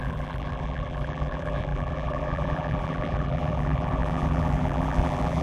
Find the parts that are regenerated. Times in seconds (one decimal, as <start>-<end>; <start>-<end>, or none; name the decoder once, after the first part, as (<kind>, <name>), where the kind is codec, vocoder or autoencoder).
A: 0.0-5.4 (vocoder, BigVGAN v2)